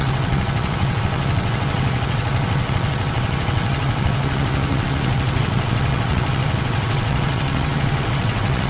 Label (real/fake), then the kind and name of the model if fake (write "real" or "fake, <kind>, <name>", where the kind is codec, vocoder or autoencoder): fake, vocoder, WaveNeXt